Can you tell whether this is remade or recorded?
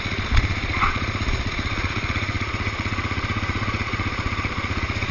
remade